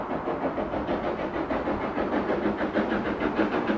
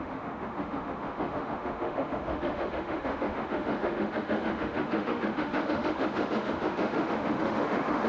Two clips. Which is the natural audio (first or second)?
first